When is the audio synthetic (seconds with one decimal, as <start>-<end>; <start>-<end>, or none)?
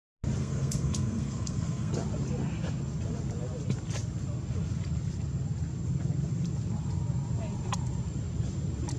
0.4-1.9